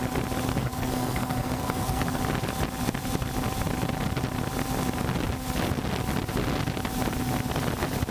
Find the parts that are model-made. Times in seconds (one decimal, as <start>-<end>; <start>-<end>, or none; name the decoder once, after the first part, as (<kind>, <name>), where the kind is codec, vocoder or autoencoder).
0.5-2.2 (codec, SNAC)